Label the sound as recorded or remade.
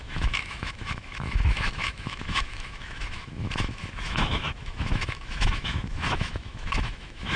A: remade